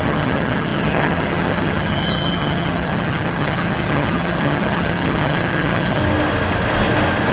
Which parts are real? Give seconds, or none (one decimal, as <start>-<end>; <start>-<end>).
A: 6.0-7.3